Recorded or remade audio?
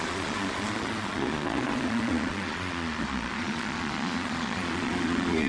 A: remade